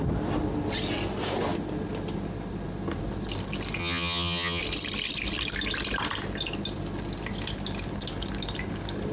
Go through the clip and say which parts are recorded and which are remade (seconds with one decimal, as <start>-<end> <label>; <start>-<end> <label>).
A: 0.0-3.8 recorded; 3.8-4.6 remade; 4.6-9.1 recorded